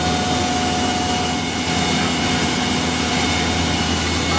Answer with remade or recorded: recorded